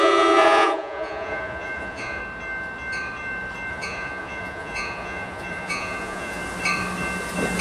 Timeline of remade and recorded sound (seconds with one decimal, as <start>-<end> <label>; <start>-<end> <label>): 0.0-2.2 remade; 2.2-3.7 recorded; 3.7-6.4 remade; 6.4-7.6 recorded